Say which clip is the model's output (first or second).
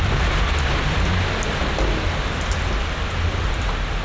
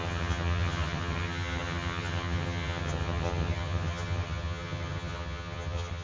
second